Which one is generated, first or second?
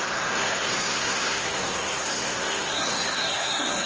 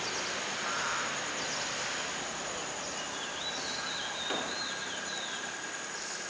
first